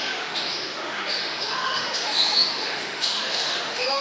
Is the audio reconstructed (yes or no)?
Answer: yes